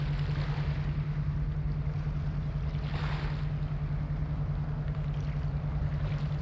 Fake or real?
real